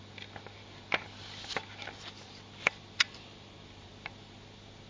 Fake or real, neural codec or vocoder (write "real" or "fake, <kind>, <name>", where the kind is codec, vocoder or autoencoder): real